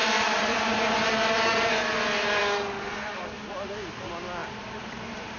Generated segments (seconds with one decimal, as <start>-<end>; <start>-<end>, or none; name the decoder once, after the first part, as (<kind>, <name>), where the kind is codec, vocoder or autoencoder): 0.0-0.6 (vocoder, BigVGAN v2); 4.4-5.4